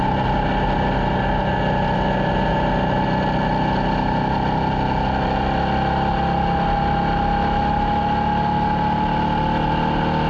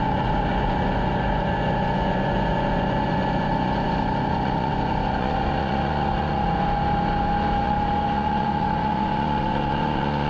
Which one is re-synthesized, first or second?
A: second